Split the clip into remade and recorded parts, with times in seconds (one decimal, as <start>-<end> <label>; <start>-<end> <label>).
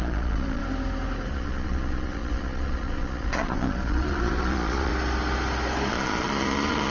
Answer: 0.0-0.6 remade; 0.6-1.3 recorded; 1.3-4.9 remade; 4.9-5.9 recorded; 5.9-6.9 remade